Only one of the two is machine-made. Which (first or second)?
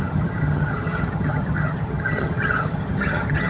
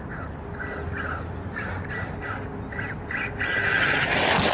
first